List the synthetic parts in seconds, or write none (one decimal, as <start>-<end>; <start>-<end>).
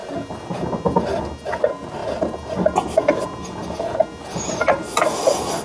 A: none